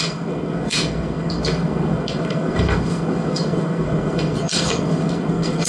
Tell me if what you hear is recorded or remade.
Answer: remade